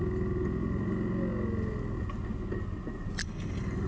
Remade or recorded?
recorded